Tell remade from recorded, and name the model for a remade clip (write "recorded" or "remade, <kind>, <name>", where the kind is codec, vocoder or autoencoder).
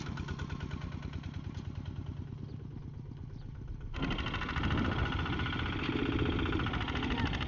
recorded